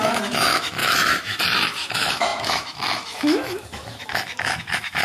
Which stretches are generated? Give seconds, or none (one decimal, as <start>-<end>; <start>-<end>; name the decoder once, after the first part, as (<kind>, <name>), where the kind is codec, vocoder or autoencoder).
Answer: 0.0-5.0 (autoencoder, DAC-VAE)